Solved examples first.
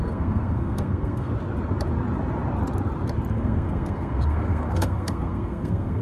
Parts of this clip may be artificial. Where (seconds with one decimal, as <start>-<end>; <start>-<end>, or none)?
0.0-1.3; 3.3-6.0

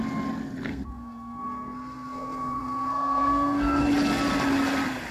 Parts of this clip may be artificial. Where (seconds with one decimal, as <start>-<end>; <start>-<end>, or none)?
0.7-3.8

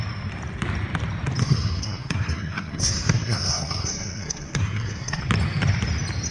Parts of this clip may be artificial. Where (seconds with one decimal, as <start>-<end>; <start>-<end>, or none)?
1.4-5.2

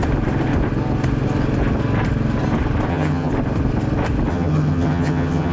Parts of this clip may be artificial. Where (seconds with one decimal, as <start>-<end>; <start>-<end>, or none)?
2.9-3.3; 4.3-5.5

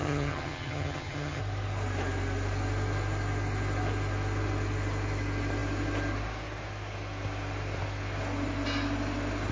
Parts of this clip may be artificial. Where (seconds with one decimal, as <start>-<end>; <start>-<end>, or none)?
0.0-1.4

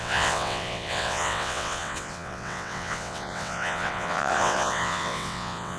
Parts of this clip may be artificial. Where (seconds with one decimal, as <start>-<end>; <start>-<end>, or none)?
0.0-5.8